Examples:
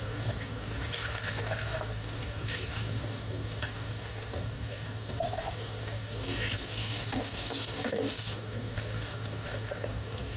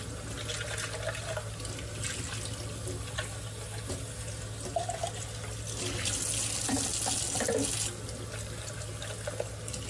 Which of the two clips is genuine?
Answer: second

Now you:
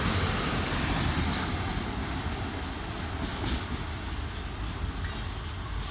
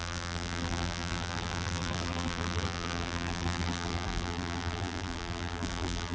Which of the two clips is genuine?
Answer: first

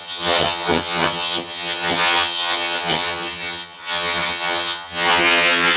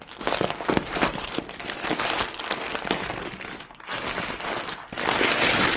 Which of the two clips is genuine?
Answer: second